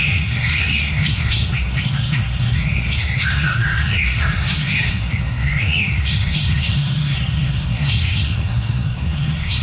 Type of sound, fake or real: fake